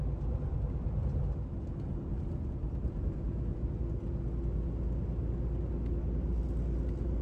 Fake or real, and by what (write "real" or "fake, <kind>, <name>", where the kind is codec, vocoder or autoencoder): real